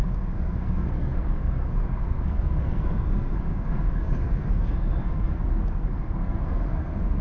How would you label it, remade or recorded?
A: remade